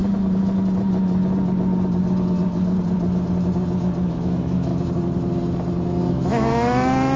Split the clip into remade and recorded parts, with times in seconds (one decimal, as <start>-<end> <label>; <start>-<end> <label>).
0.0-4.1 recorded; 4.1-4.7 remade; 4.7-6.1 recorded; 6.1-7.2 remade